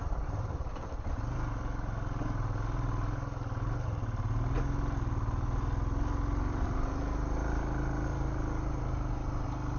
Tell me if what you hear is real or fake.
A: real